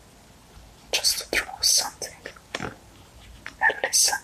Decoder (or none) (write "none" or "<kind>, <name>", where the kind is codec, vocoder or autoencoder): none